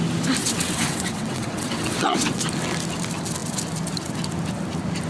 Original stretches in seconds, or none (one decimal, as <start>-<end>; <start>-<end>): 0.0-0.4; 2.4-5.1